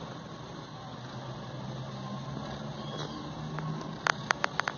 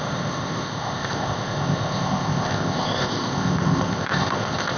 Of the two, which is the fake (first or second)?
second